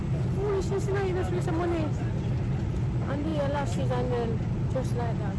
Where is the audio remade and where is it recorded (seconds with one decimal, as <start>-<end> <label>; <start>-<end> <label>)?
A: 0.0-5.4 recorded